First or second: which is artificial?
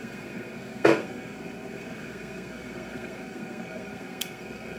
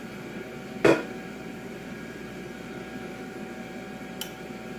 first